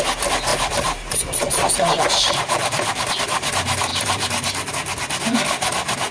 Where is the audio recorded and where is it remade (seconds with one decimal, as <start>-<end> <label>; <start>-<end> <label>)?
0.0-0.5 recorded; 0.5-3.1 remade; 3.1-3.9 recorded; 3.9-4.7 remade; 4.7-6.1 recorded